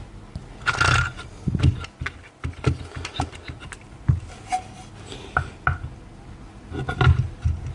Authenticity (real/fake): real